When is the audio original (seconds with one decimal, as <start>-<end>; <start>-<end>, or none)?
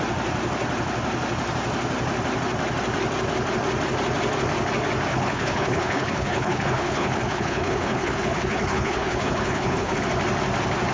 0.0-5.1; 10.0-10.9